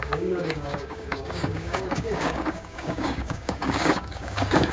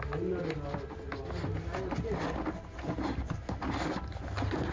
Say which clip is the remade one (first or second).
first